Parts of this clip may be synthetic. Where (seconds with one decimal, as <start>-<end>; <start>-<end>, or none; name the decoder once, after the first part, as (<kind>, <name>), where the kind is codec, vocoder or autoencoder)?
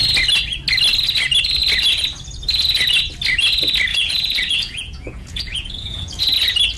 3.9-6.2 (vocoder, Vocos)